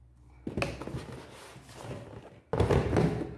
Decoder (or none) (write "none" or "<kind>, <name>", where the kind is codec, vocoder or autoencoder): none